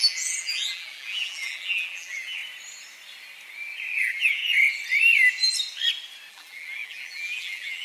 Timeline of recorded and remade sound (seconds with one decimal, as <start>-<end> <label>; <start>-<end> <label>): 0.0-2.4 remade; 2.4-4.0 recorded; 4.0-4.4 remade; 4.4-6.3 recorded; 6.3-7.8 remade